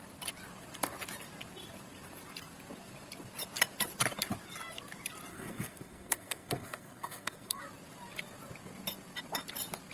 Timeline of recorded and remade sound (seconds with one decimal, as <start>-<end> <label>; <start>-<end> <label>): 0.0-5.3 recorded; 5.3-7.6 remade; 7.6-9.9 recorded